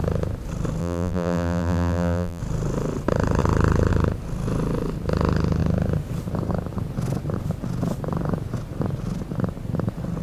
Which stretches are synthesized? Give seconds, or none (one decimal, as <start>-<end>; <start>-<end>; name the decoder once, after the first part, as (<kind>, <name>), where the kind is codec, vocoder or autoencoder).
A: 0.8-2.4 (vocoder, BigVGAN v2)